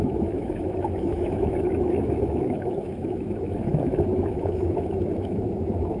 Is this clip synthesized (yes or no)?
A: yes